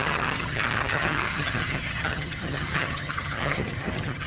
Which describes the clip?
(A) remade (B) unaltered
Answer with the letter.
A